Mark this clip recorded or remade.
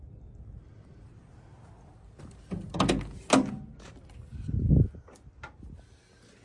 recorded